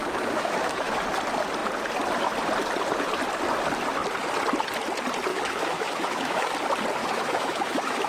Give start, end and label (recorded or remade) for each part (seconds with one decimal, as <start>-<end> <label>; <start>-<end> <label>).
0.0-1.0 remade; 1.0-5.3 recorded; 5.3-6.5 remade; 6.5-7.0 recorded; 7.0-8.1 remade